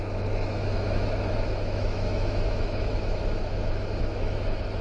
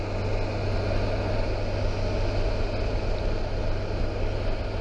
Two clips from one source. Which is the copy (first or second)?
first